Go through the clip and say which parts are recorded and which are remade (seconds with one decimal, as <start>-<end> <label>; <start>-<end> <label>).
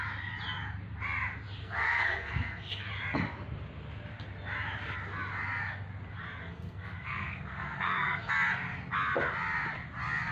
0.0-1.6 recorded; 1.6-2.9 remade; 2.9-6.4 recorded; 6.4-8.3 remade; 8.3-10.3 recorded